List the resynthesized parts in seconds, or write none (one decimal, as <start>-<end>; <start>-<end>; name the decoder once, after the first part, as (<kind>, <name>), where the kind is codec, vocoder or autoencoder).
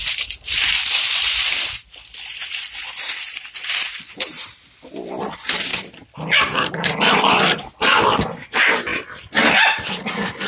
0.0-8.9 (vocoder, BigVGAN v2); 9.9-10.5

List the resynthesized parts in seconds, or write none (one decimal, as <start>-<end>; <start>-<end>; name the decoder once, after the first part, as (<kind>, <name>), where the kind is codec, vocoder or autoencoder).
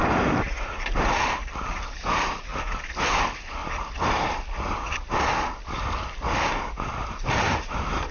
0.0-2.5 (vocoder, BigVGAN v2); 3.2-3.6; 7.3-8.1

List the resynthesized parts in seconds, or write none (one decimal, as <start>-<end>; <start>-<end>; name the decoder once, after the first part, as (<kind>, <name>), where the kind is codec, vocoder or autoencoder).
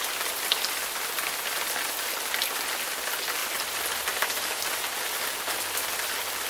3.4-4.7 (vocoder, BigVGAN v2)